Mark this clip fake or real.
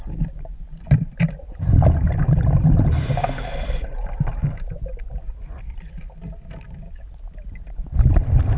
real